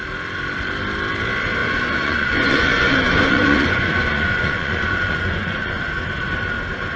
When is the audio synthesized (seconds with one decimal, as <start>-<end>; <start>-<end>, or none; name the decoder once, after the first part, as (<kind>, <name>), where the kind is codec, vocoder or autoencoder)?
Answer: 1.6-5.8 (vocoder, Vocos)